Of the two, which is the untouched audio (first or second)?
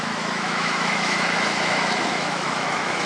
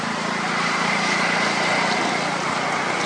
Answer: second